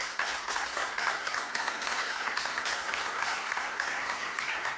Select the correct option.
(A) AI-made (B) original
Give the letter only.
A